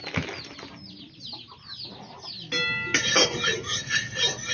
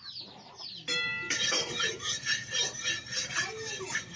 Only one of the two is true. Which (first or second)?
first